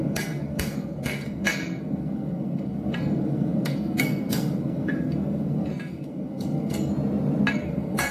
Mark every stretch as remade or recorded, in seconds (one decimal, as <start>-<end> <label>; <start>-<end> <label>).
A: 0.0-6.9 remade; 6.9-7.5 recorded; 7.5-8.1 remade